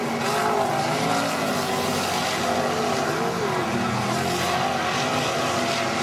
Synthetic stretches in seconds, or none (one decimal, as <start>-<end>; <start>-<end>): none

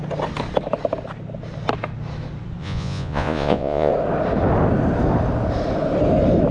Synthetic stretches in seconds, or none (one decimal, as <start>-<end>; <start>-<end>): 2.6-3.9

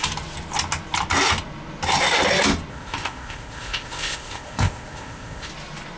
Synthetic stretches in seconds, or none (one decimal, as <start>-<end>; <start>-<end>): 2.7-5.5

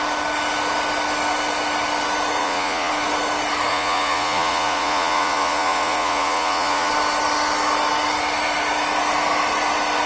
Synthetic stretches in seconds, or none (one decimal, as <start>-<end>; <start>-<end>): 2.4-2.9; 3.7-6.9

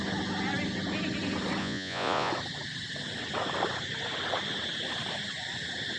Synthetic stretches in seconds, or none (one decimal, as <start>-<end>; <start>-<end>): 1.6-2.3

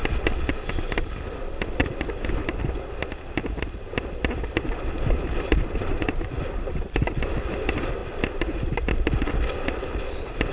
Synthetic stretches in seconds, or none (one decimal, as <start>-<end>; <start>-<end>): 0.7-1.8; 5.8-8.0; 10.1-10.5